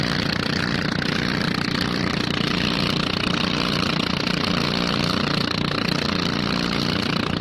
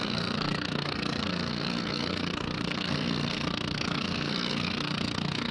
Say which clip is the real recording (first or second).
first